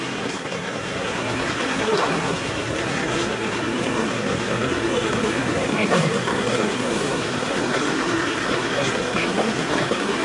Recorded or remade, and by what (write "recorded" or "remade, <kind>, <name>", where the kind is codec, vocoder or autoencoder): remade, codec, SNAC